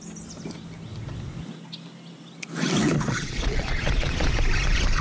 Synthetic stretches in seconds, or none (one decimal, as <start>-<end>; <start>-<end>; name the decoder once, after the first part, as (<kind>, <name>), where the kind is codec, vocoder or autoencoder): 2.8-4.3 (vocoder, Vocos)